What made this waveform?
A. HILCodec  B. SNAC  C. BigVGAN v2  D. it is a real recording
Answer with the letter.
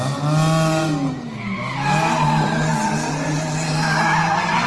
D